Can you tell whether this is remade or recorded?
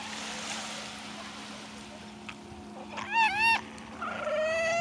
recorded